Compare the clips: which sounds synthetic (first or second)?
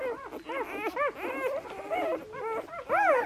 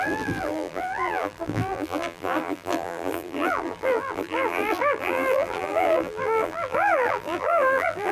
second